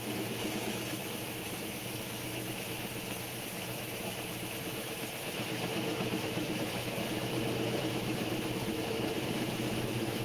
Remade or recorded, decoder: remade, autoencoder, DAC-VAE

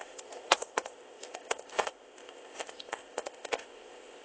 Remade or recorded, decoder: remade, codec, ZipCodec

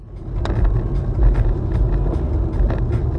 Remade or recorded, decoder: recorded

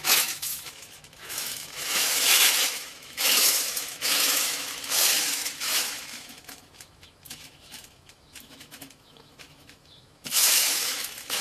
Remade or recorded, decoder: remade, autoencoder, DAC-VAE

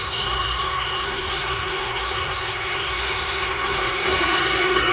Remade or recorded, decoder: remade, codec, SNAC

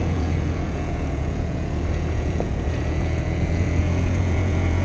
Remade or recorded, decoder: remade, vocoder, Vocos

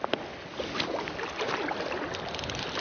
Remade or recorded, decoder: recorded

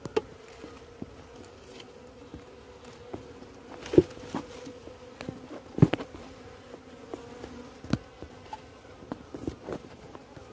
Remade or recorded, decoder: recorded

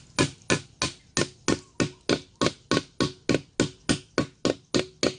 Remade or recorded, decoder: recorded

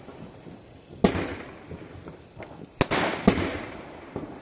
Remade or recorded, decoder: recorded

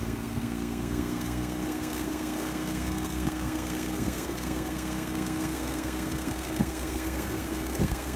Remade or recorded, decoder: remade, codec, SNAC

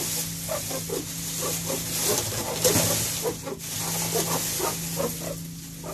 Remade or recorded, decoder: recorded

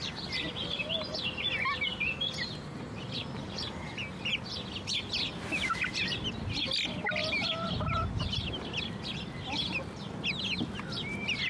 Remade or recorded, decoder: recorded